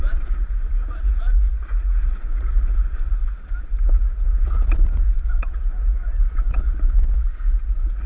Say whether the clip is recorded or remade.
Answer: remade